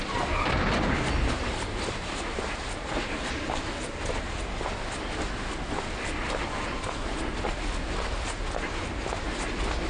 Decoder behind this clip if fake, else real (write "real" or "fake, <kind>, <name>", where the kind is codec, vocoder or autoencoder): real